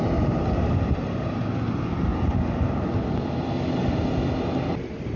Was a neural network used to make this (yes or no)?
no